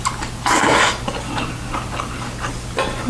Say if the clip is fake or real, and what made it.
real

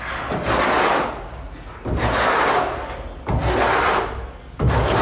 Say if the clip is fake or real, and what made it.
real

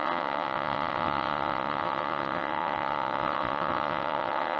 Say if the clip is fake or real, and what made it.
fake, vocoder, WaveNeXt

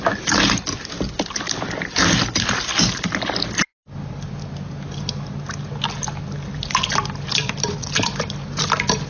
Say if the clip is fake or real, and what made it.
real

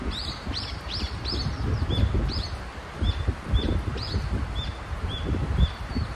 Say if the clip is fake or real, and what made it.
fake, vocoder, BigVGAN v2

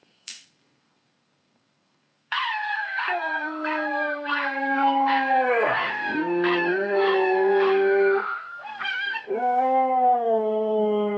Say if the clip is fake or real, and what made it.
fake, codec, SNAC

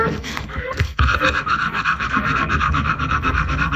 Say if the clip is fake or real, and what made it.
fake, codec, SNAC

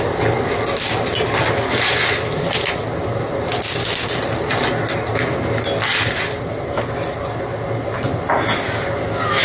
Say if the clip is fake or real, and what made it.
real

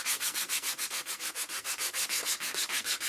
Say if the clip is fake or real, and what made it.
fake, codec, SNAC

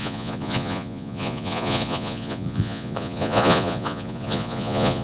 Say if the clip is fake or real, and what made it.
fake, vocoder, Vocos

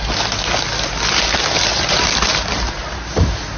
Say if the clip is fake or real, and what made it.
real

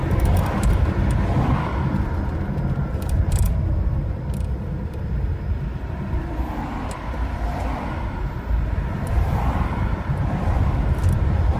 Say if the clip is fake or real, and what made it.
real